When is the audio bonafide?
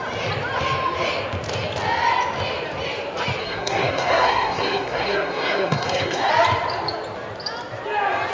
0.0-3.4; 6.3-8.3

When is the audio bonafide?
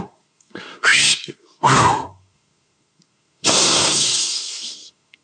none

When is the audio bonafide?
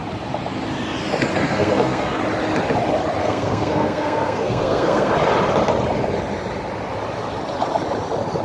0.0-1.3; 2.2-3.2; 5.1-8.4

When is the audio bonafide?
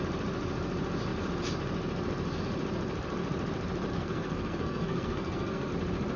0.0-3.9; 5.7-6.2